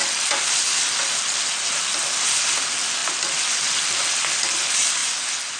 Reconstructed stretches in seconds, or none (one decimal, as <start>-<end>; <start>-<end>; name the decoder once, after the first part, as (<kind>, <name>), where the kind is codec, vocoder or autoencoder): none